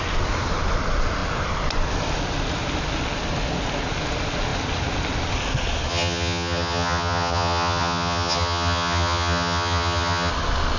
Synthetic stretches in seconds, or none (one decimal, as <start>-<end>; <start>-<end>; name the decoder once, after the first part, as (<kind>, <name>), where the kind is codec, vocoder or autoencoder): 5.9-10.3 (vocoder, HiFi-GAN)